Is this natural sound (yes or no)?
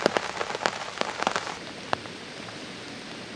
yes